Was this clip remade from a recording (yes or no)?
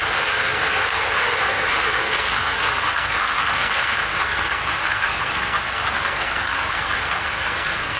yes